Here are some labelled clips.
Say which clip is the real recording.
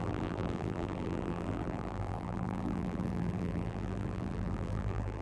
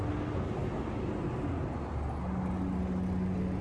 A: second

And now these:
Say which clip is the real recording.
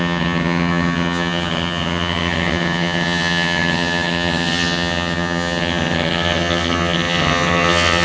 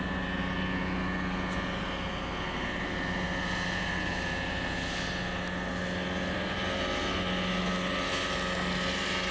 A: second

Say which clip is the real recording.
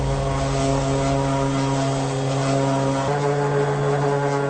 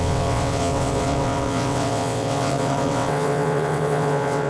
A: first